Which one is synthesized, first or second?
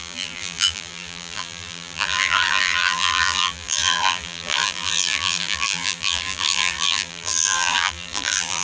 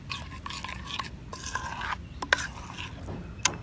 first